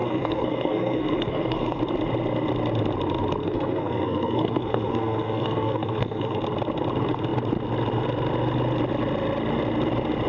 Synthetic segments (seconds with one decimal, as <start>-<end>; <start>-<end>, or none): 0.0-1.8; 3.4-6.4